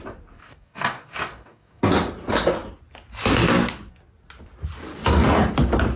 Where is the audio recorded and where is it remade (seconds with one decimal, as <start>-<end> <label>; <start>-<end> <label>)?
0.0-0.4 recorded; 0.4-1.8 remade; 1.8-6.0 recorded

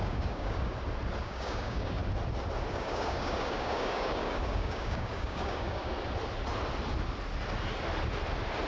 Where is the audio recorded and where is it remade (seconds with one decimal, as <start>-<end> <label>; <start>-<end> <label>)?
0.0-0.7 remade; 0.7-1.2 recorded; 1.2-2.0 remade; 2.0-2.7 recorded; 2.7-5.9 remade; 5.9-8.7 recorded

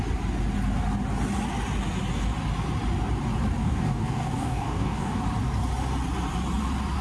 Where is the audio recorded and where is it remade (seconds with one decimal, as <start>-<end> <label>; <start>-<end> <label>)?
0.0-3.6 recorded; 3.6-5.2 remade; 5.2-7.0 recorded

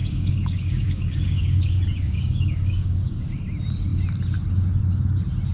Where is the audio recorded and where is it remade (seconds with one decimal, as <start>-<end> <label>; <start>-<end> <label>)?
0.0-3.3 remade; 3.3-5.5 recorded

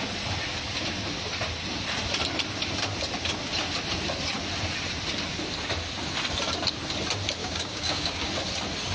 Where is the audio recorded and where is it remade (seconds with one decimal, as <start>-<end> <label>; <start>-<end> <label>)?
0.0-7.4 recorded; 7.4-8.3 remade; 8.3-8.9 recorded

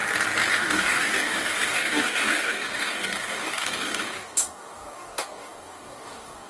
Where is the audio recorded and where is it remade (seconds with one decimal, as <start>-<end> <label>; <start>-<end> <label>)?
0.0-0.5 recorded; 0.5-6.5 remade

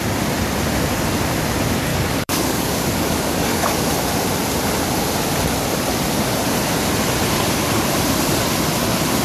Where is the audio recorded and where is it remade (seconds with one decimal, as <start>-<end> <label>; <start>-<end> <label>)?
0.0-1.9 recorded; 1.9-3.9 remade; 3.9-9.2 recorded